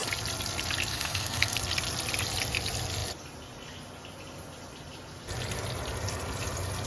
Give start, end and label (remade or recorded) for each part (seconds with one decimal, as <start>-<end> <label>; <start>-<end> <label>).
0.0-0.9 recorded; 0.9-1.6 remade; 1.6-6.9 recorded